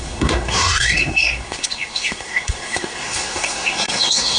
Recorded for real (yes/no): no